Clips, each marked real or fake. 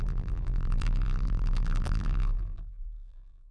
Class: fake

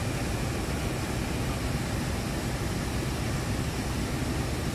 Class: real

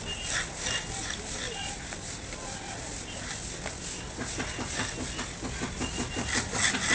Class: real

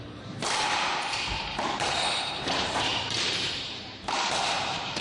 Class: fake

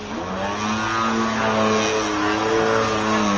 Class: real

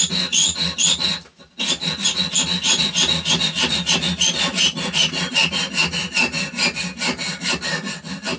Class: real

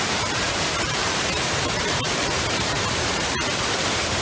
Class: fake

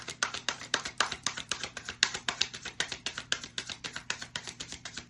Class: fake